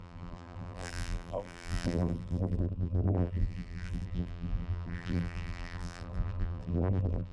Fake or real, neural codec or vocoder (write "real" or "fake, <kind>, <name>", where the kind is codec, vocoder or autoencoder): fake, vocoder, BigVGAN v2